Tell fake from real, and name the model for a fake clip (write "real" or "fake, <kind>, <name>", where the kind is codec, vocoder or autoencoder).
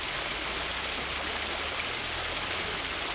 real